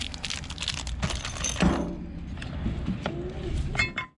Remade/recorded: recorded